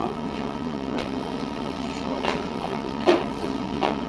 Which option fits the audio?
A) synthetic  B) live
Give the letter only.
A